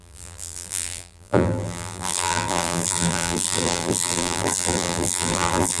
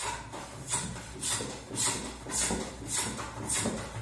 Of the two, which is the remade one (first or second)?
first